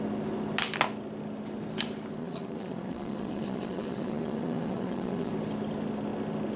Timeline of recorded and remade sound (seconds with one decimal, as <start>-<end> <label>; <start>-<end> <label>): 0.0-2.2 recorded; 2.2-5.3 remade; 5.3-6.6 recorded